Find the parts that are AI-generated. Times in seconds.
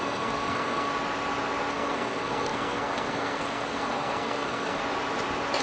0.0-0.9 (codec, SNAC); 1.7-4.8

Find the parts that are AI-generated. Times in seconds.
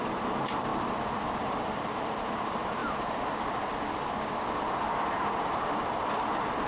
0.0-0.7 (vocoder, BigVGAN v2); 1.4-2.8; 5.0-6.7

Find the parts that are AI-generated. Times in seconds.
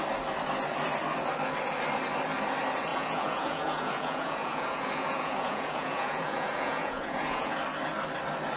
2.9-7.5 (vocoder, Vocos)